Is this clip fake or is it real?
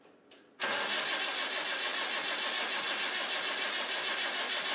real